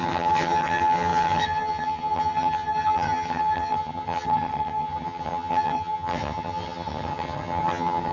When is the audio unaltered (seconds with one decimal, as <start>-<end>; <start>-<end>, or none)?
none